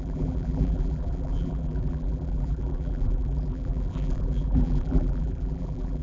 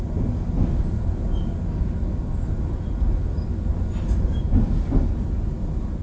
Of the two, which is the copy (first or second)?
first